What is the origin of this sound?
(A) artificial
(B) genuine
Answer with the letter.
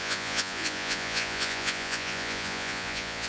A